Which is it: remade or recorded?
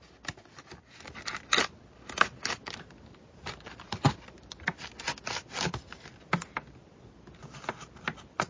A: recorded